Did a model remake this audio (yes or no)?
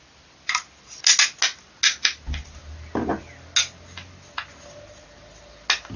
no